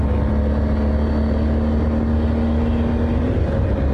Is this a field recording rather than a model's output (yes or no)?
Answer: yes